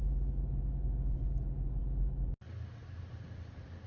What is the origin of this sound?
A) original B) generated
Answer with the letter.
A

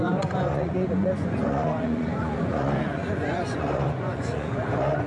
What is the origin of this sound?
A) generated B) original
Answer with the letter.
A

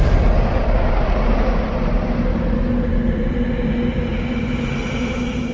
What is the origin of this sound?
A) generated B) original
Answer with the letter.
B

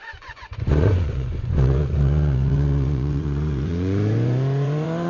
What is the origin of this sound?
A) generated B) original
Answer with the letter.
A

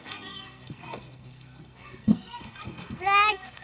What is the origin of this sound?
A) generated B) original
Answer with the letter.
A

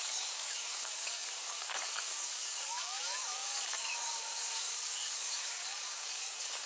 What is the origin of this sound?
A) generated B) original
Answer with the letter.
A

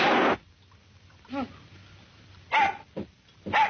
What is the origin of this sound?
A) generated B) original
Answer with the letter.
B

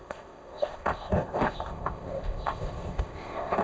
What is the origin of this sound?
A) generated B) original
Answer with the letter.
A